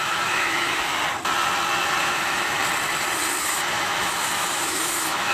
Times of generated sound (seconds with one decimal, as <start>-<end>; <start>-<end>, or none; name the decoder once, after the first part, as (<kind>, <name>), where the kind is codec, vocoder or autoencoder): 0.0-0.9 (autoencoder, DAC-VAE); 2.0-2.6; 3.4-5.3